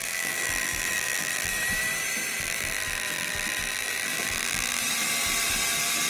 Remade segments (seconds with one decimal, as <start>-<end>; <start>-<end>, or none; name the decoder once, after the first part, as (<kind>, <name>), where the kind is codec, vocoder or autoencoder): 0.0-1.5 (vocoder, BigVGAN v2); 2.4-4.8